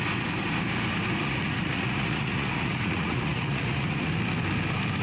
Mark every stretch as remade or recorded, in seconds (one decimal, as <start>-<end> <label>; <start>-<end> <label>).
0.0-1.2 recorded; 1.2-4.1 remade; 4.1-5.0 recorded